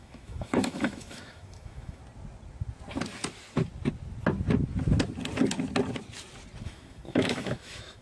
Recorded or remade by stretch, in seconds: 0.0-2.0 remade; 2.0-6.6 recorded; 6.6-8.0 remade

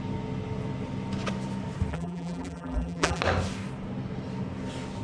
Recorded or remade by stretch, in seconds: 0.0-1.9 recorded; 1.9-3.2 remade; 3.2-5.0 recorded

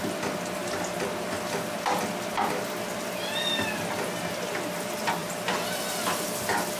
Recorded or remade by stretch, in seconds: 0.0-6.8 recorded